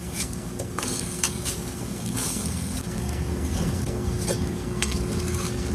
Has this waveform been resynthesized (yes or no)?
yes